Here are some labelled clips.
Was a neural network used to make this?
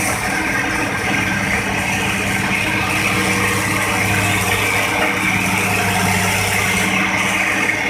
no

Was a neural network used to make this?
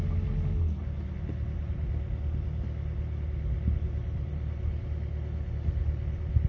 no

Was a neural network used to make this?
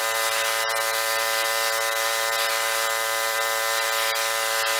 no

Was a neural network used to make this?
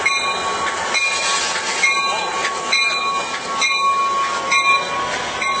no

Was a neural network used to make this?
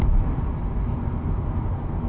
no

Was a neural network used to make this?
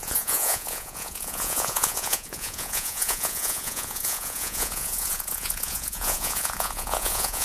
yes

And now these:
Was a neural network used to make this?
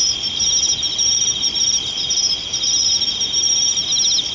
no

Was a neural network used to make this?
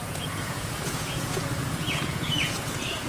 yes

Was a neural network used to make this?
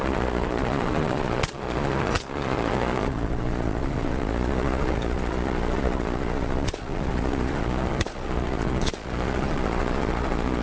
yes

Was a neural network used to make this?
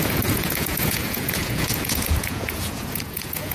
yes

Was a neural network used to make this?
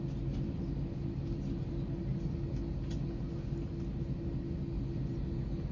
no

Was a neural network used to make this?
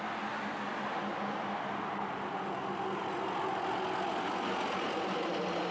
no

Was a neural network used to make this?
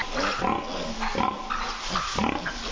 no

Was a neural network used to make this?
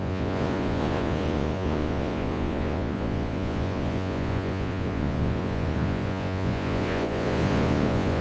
yes